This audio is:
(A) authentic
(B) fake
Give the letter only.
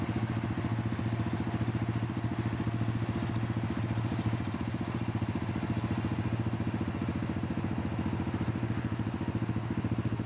A